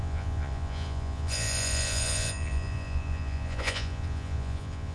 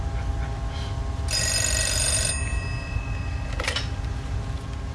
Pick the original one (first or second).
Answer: second